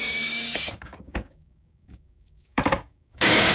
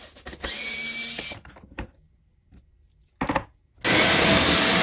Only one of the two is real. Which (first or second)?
second